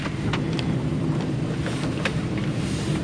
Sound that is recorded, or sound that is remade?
recorded